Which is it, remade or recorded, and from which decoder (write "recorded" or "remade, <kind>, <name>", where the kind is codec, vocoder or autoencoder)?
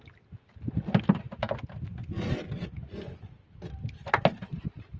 recorded